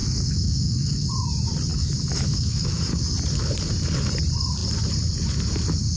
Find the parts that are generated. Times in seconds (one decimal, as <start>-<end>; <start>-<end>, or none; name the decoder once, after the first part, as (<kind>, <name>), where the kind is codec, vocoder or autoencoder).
0.0-1.1 (autoencoder, DAC-VAE); 1.7-2.8